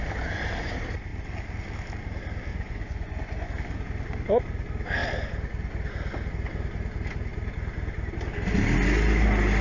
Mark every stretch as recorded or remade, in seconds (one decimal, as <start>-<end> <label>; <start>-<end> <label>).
0.0-2.5 recorded; 2.5-3.5 remade; 3.5-9.6 recorded